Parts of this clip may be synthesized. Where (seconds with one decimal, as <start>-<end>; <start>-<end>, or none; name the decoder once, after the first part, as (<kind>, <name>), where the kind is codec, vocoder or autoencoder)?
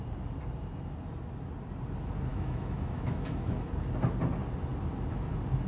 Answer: 2.3-3.7 (autoencoder, DAC-VAE)